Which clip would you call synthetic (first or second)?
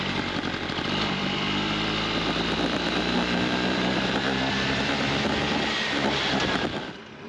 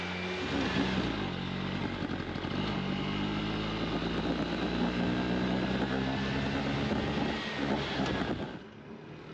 first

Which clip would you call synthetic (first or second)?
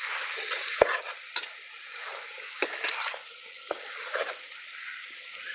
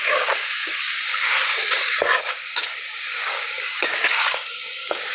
second